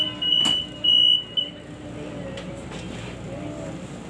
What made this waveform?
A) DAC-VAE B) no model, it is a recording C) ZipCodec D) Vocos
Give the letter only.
B